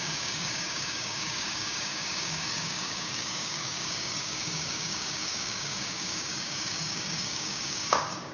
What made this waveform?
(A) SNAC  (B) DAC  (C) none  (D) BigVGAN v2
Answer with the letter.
B